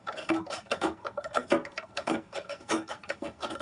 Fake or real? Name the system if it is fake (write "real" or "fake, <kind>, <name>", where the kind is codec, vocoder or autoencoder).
fake, codec, SNAC